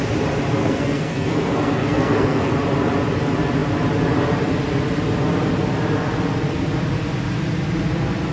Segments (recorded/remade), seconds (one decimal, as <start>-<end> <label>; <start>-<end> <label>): 0.0-0.6 recorded; 0.6-2.5 remade; 2.5-8.3 recorded